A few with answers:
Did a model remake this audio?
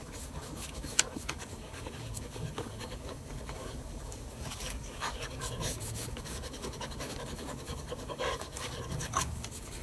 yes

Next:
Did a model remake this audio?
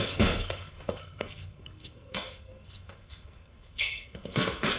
yes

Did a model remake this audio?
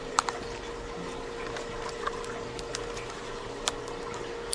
no